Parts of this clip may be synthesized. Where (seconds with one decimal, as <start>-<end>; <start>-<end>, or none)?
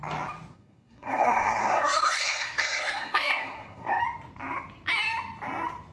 0.5-4.0